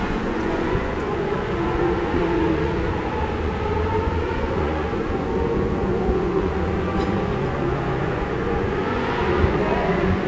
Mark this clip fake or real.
fake